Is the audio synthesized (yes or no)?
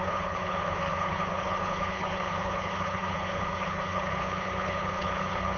yes